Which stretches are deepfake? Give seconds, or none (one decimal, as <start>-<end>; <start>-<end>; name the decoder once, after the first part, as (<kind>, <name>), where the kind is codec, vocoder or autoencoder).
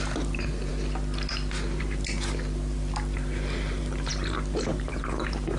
0.0-0.7 (vocoder, BigVGAN v2); 1.8-5.6